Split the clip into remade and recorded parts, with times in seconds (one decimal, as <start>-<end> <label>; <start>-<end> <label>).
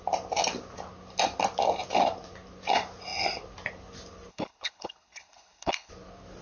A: 0.0-4.3 recorded; 4.3-5.9 remade; 5.9-6.4 recorded